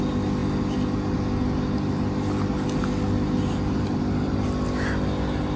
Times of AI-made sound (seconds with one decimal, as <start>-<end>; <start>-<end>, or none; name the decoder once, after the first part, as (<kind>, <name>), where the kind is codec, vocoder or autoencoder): none